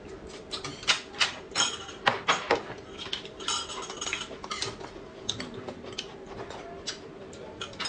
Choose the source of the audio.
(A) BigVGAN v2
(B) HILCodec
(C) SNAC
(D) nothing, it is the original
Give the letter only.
D